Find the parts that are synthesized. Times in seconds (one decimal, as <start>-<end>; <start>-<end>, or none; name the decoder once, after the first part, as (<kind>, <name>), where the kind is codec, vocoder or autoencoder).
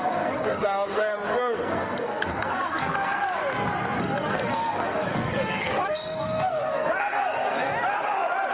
0.0-3.4 (codec, SNAC); 4.0-7.7